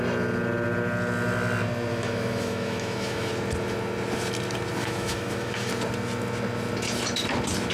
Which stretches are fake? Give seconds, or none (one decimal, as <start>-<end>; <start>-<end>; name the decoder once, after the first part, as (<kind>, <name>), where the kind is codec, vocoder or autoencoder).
1.9-3.3 (autoencoder, DAC-VAE); 4.8-5.7